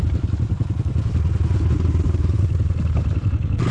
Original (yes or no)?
yes